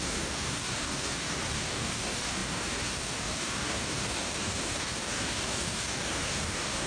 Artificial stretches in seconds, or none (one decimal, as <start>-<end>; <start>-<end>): 0.0-6.9